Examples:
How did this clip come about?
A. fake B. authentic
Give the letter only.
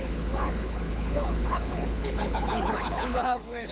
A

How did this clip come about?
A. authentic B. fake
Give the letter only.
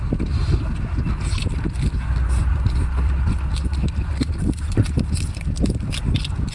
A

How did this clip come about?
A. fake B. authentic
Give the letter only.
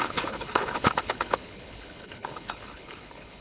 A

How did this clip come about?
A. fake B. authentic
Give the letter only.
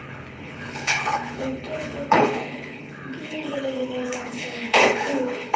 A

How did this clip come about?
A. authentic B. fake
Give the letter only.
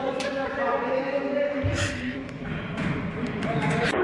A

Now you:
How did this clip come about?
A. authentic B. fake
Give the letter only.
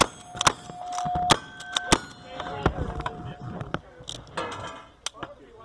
A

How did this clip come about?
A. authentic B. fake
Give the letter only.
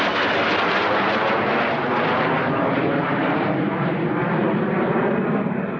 A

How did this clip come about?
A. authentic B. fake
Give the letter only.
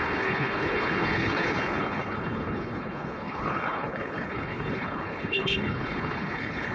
B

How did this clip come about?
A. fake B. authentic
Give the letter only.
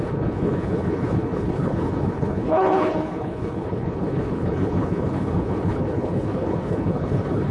A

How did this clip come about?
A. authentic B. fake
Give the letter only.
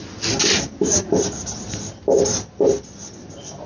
A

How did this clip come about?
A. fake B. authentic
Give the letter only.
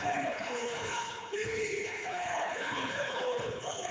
A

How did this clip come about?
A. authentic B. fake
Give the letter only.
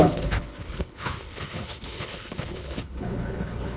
B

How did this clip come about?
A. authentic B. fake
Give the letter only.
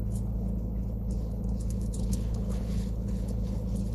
B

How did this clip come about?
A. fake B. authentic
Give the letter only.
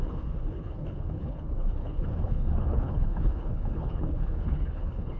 A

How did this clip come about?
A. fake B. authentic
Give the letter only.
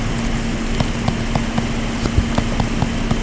B